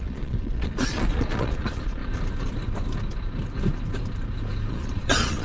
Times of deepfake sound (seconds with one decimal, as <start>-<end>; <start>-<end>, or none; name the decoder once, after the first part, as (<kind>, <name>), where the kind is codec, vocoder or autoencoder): 0.0-2.0 (vocoder, Vocos); 4.7-5.4